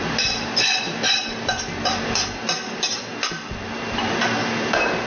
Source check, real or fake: real